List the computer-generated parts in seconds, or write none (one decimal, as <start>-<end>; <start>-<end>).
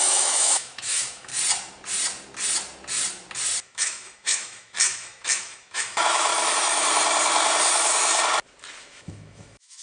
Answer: 0.0-1.3; 3.6-6.3; 8.8-9.8